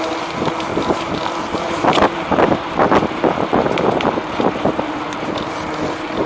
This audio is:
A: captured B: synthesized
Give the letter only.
A